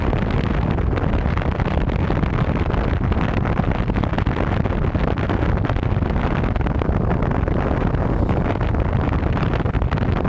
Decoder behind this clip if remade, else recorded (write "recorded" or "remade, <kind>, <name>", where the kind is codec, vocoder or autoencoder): recorded